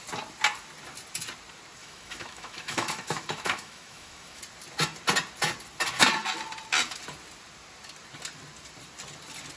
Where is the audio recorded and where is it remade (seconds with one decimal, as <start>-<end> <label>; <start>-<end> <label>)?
0.0-1.8 recorded; 1.8-4.4 remade; 4.4-9.6 recorded